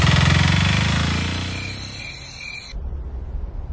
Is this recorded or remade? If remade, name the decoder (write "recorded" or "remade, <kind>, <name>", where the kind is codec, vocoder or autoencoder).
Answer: recorded